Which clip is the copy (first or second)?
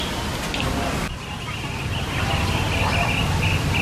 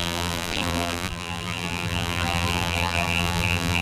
second